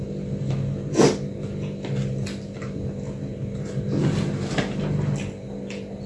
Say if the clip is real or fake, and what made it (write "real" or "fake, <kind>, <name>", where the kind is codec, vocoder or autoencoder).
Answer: real